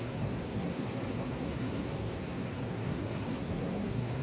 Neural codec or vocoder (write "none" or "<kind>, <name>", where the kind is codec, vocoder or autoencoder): codec, SNAC